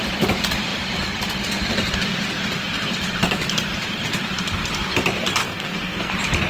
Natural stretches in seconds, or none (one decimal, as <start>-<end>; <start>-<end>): 0.0-5.4; 6.1-6.5